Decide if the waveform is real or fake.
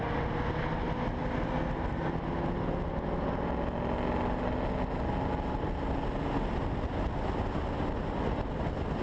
real